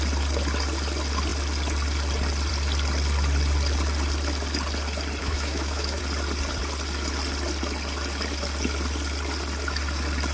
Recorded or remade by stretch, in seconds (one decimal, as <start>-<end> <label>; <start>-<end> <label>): 0.0-5.2 recorded; 5.2-6.0 remade; 6.0-10.3 recorded